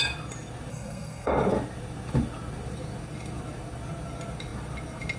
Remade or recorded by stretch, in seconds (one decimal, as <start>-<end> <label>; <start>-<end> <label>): 0.0-0.7 recorded; 0.7-1.3 remade; 1.3-5.2 recorded